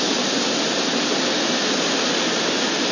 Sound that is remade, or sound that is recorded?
recorded